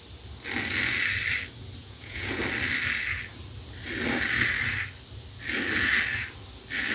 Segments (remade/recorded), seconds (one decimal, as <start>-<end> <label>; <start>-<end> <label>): 0.0-1.8 recorded; 1.8-2.4 remade; 2.4-6.9 recorded